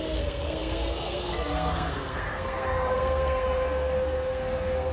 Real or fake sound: fake